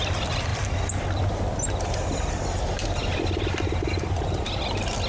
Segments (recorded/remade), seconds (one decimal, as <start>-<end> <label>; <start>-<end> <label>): 0.0-5.1 recorded